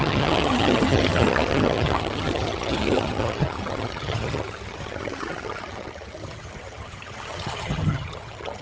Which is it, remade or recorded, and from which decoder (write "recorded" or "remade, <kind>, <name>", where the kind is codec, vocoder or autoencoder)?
remade, vocoder, HiFi-GAN